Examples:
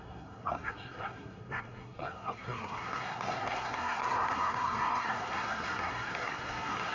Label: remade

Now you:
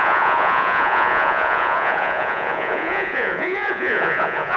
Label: remade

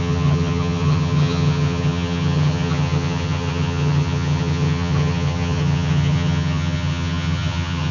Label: remade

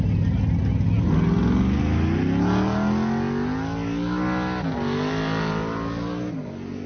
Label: recorded